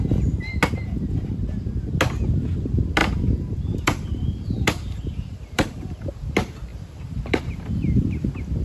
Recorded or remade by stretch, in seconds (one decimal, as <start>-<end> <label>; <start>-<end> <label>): 0.0-3.0 recorded; 3.0-6.1 remade; 6.1-6.7 recorded; 6.7-7.4 remade; 7.4-8.6 recorded